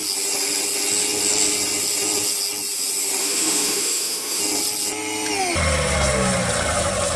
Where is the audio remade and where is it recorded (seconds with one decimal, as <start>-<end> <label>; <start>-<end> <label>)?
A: 0.0-3.2 recorded; 3.2-4.4 remade; 4.4-7.2 recorded